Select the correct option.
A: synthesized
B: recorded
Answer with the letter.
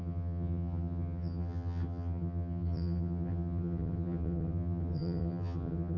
A